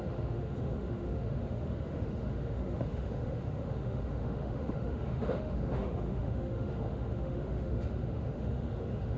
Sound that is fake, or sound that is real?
fake